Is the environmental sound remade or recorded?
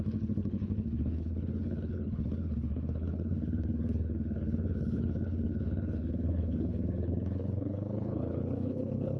remade